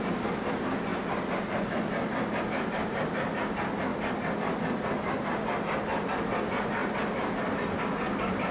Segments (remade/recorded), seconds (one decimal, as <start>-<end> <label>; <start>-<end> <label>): 0.0-8.5 recorded